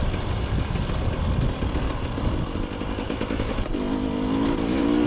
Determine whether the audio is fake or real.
real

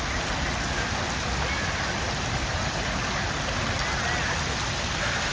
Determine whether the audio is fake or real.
real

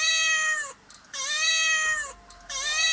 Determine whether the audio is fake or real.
real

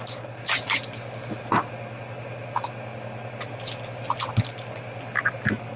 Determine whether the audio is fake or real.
real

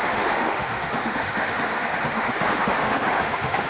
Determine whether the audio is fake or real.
fake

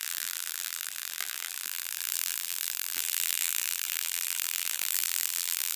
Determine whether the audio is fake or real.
fake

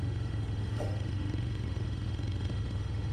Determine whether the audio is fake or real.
fake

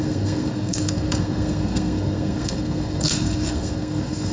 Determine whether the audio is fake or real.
fake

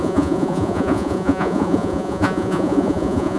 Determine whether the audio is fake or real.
fake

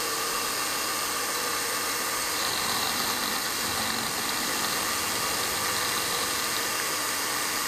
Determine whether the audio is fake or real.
real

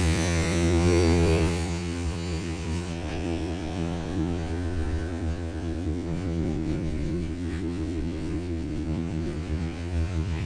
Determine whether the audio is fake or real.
fake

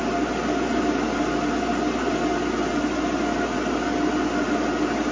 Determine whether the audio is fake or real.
real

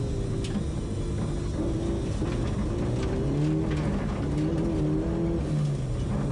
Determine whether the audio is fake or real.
real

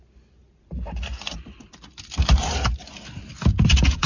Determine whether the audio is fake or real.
real